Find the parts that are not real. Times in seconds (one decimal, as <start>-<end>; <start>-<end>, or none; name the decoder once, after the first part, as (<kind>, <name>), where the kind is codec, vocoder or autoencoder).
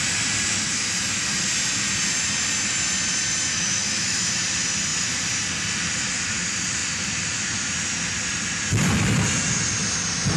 3.5-4.3 (autoencoder, DAC-VAE)